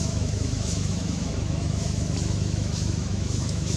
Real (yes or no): no